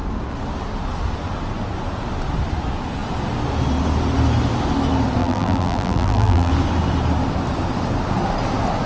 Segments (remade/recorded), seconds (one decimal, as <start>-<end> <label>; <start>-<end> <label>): 0.0-5.2 recorded; 5.2-6.5 remade; 6.5-8.9 recorded